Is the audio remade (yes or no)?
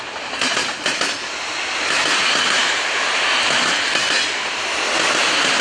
no